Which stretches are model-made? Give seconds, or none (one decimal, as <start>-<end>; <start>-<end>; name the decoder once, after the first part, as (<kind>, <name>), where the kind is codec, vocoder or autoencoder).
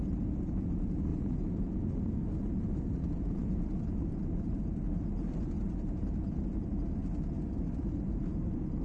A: 0.0-7.0 (vocoder, BigVGAN v2); 7.6-8.8